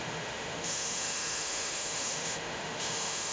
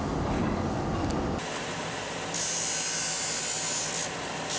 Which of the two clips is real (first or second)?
second